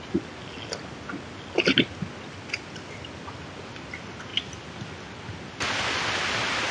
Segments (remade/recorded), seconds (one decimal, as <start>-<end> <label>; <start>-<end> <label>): 0.0-6.7 recorded